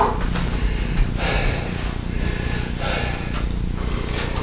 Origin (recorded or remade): recorded